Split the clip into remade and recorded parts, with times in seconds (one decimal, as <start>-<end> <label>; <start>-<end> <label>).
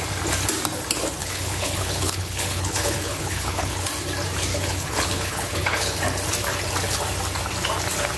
0.0-1.2 recorded; 1.2-3.9 remade; 3.9-4.5 recorded; 4.5-6.0 remade; 6.0-8.2 recorded